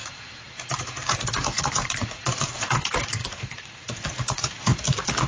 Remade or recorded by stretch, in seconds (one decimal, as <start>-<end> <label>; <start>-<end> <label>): 0.0-4.7 remade; 4.7-5.3 recorded